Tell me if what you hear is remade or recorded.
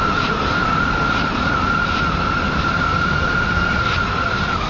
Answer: recorded